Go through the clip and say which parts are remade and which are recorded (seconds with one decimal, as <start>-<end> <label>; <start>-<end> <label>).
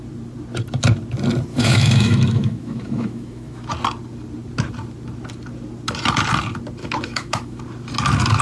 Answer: 0.0-1.5 recorded; 1.5-3.7 remade; 3.7-6.8 recorded; 6.8-7.6 remade; 7.6-8.4 recorded